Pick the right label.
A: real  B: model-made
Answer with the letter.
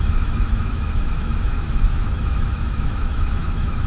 B